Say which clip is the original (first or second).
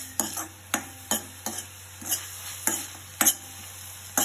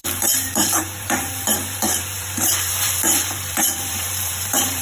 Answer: first